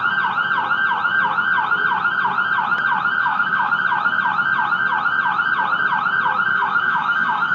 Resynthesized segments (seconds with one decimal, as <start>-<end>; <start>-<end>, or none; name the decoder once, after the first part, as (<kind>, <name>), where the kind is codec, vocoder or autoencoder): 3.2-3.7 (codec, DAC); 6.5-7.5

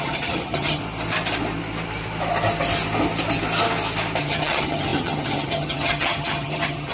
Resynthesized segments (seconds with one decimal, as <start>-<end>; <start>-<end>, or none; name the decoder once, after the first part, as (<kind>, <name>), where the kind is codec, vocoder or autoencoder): 0.0-0.8 (vocoder, HiFi-GAN); 4.2-6.9

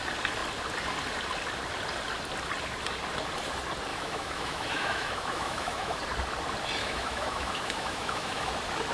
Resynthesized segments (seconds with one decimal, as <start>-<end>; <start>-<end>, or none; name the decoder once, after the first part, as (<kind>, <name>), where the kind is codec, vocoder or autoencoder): 3.9-6.0 (autoencoder, DAC-VAE); 6.8-8.5

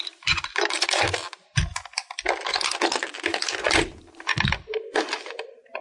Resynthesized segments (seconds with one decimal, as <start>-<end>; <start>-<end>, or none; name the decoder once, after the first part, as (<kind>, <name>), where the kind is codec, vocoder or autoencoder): 0.0-1.7 (vocoder, BigVGAN v2); 3.6-5.8

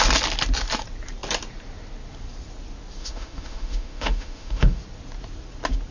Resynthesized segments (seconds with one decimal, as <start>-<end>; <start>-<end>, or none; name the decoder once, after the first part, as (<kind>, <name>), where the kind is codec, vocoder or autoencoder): 3.0-4.8 (autoencoder, DAC-VAE)

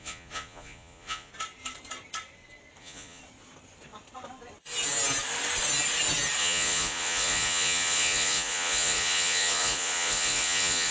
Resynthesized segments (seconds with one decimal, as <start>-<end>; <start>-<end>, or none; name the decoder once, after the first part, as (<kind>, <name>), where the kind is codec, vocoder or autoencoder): 0.0-1.3 (vocoder, Vocos); 2.8-3.2; 6.4-10.9

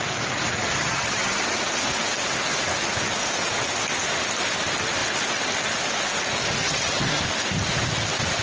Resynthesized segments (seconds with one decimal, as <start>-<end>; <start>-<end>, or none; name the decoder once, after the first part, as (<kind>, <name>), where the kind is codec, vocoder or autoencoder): 0.8-1.4 (vocoder, HiFi-GAN); 6.6-7.2